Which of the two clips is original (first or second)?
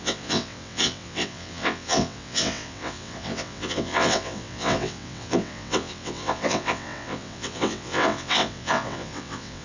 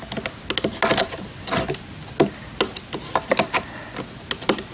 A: second